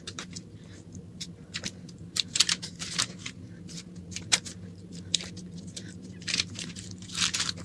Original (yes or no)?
no